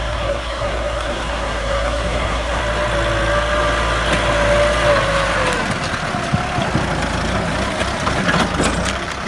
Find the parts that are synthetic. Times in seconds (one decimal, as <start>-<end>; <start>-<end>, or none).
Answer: 0.0-2.6